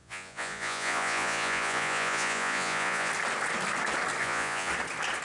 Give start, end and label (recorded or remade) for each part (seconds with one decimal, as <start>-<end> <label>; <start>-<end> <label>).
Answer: 0.0-3.1 remade; 3.1-4.2 recorded; 4.2-4.7 remade; 4.7-5.2 recorded